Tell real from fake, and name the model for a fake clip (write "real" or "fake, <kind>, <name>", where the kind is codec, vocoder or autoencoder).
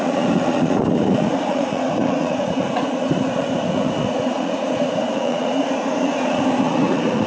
fake, vocoder, Vocos